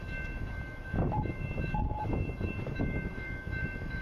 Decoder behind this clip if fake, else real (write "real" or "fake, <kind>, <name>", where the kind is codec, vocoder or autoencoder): fake, autoencoder, DAC-VAE